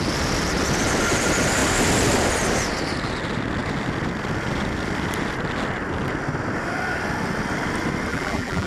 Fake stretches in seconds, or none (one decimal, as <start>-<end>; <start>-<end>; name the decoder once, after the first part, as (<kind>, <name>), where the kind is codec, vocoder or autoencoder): 8.1-8.7 (vocoder, BigVGAN v2)